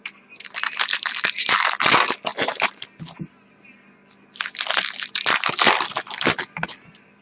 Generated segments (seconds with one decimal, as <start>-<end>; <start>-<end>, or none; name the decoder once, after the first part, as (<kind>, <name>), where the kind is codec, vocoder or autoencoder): none